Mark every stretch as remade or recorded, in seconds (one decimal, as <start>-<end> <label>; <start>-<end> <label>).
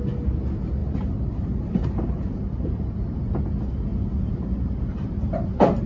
0.0-0.8 recorded; 0.8-3.3 remade; 3.3-3.9 recorded; 3.9-5.9 remade